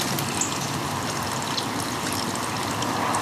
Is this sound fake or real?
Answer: real